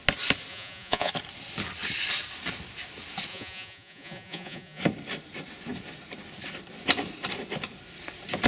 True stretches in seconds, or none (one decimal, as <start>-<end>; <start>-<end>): 0.0-0.5; 1.1-3.3; 4.8-8.5